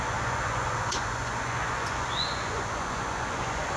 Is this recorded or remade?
remade